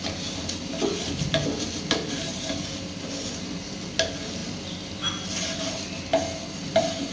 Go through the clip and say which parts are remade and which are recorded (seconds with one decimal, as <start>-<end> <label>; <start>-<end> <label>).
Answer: 0.0-7.1 recorded